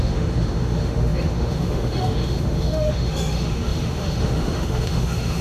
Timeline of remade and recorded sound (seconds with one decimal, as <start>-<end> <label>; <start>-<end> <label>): 0.0-5.4 remade

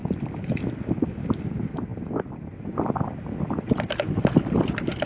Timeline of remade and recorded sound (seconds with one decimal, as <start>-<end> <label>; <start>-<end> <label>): 0.0-5.1 recorded

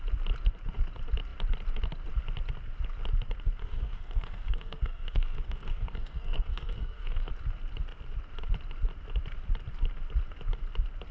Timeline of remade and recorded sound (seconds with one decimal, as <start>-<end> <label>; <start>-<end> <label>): 0.0-3.6 recorded; 3.6-7.3 remade; 7.3-11.1 recorded

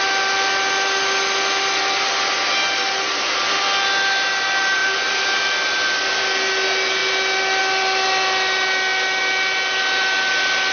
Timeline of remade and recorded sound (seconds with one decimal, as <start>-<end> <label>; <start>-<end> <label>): 0.0-10.7 recorded